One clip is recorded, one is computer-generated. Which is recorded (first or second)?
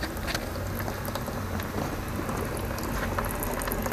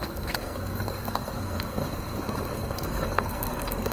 first